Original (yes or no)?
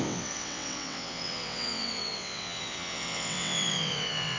no